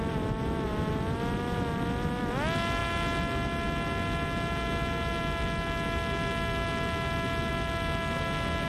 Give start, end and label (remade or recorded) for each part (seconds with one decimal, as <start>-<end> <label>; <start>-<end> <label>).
0.0-8.7 recorded